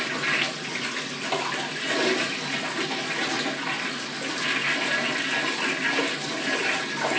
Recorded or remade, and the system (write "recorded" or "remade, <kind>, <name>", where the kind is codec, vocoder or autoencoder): recorded